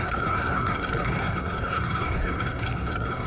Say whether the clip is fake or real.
fake